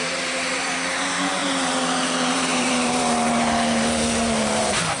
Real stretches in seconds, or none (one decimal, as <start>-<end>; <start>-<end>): none